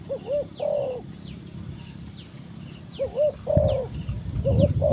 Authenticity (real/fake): real